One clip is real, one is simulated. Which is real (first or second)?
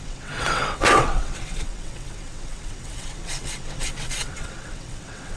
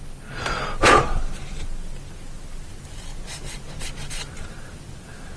second